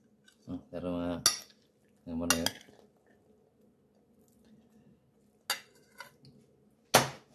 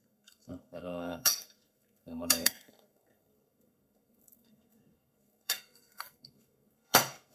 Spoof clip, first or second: second